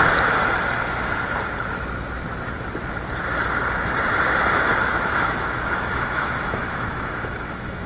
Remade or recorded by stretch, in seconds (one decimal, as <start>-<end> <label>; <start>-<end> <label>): 0.0-4.8 recorded; 4.8-7.9 remade